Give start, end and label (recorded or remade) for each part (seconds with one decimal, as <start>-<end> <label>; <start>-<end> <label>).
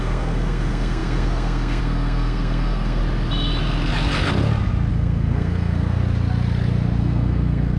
0.0-3.0 remade; 3.0-4.9 recorded; 4.9-6.0 remade; 6.0-7.0 recorded; 7.0-7.8 remade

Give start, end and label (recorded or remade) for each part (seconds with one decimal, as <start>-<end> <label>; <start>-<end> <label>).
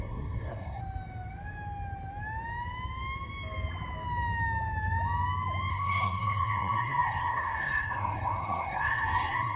0.0-0.8 remade; 0.8-5.7 recorded; 5.7-9.6 remade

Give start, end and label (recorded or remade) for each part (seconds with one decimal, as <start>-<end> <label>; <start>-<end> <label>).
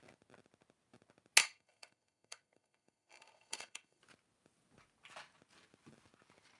0.0-1.4 recorded; 1.4-4.0 remade; 4.0-6.6 recorded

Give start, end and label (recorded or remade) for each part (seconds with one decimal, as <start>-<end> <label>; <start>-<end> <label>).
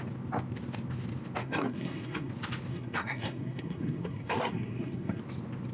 0.0-1.4 recorded; 1.4-2.3 remade; 2.3-2.7 recorded; 2.7-5.2 remade; 5.2-5.7 recorded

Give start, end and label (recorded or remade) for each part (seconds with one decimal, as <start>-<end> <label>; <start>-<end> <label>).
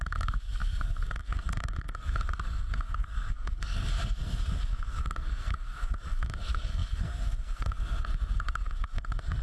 0.0-9.4 remade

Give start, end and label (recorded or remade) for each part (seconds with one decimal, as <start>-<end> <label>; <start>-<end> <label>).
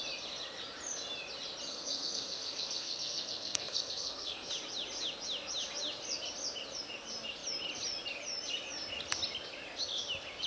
0.0-1.7 recorded; 1.7-4.5 remade; 4.5-10.5 recorded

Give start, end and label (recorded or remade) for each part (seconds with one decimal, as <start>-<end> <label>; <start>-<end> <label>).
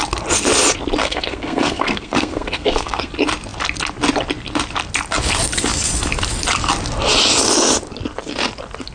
0.0-1.0 recorded; 1.0-3.1 remade; 3.1-8.9 recorded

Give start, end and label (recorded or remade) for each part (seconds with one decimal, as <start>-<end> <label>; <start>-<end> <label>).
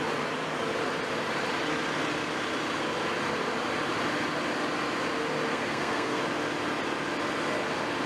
0.0-5.5 recorded; 5.5-6.2 remade; 6.2-8.1 recorded